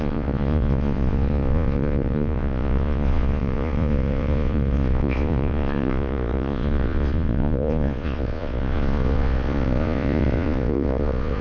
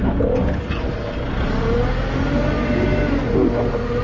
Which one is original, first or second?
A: second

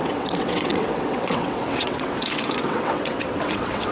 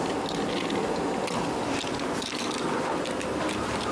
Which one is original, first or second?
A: second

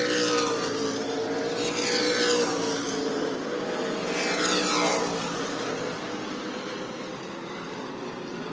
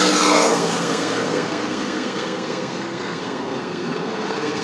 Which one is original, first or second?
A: first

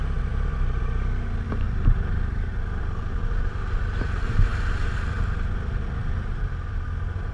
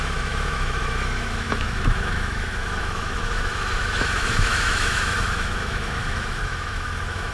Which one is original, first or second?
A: first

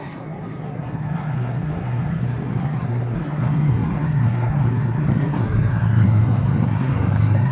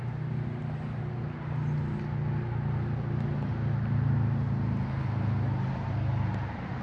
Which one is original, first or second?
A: second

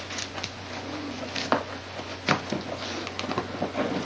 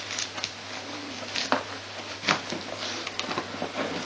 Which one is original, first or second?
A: second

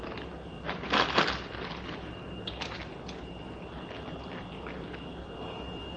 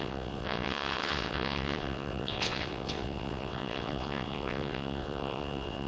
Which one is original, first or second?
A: first